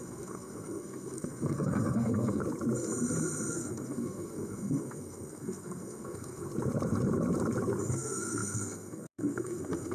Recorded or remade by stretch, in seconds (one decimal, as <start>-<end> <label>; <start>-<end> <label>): 0.0-2.4 remade; 2.4-3.5 recorded; 3.5-6.5 remade; 6.5-7.9 recorded; 7.9-9.9 remade